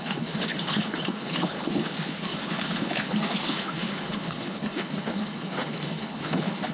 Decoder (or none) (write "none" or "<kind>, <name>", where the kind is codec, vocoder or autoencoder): codec, HILCodec